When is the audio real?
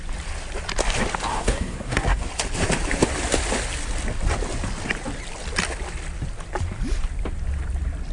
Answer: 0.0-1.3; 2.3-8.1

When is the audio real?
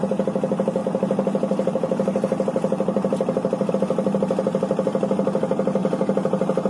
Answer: 0.0-6.7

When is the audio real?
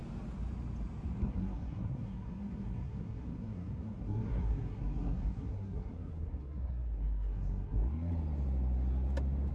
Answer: 0.0-1.2; 8.1-9.5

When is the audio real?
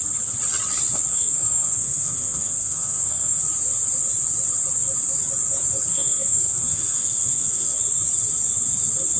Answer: 0.0-1.1; 3.4-5.9; 7.8-9.2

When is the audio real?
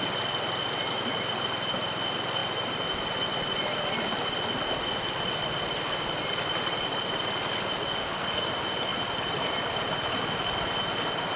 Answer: 0.0-8.0; 8.5-11.4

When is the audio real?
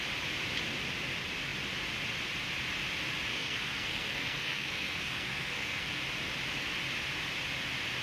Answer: 0.0-3.3; 6.0-8.0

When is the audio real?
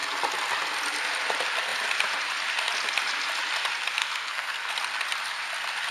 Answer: 0.0-4.0; 4.7-5.9